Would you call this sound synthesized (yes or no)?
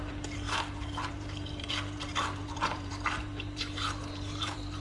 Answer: yes